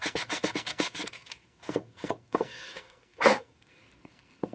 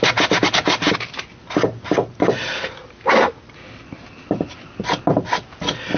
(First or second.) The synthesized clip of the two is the first